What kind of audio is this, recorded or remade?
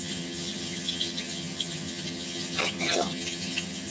remade